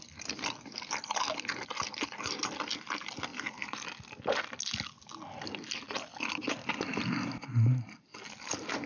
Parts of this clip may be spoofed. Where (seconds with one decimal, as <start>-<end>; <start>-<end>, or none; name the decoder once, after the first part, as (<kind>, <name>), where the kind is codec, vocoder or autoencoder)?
none